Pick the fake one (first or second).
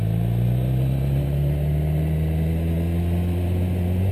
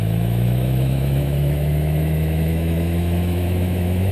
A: second